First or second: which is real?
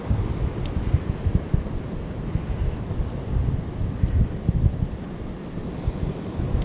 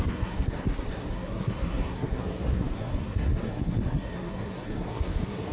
first